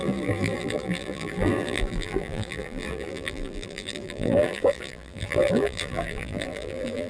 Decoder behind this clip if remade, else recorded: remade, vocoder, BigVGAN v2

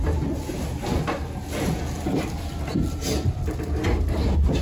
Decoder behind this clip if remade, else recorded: recorded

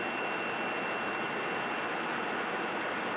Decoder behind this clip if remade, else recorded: recorded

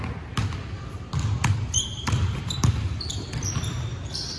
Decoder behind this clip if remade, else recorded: recorded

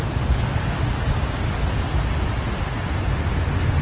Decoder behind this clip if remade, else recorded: recorded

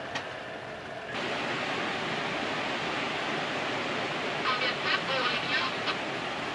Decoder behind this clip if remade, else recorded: recorded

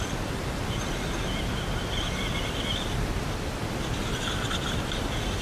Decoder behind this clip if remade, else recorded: recorded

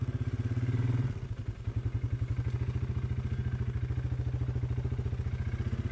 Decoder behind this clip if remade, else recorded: recorded